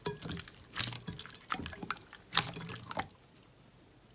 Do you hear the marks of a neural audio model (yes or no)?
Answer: no